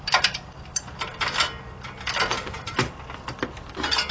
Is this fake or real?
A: real